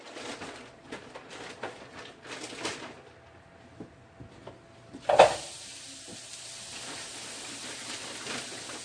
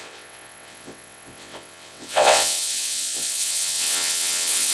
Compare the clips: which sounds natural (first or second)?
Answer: first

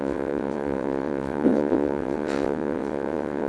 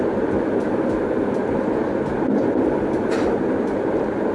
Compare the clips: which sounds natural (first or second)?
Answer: second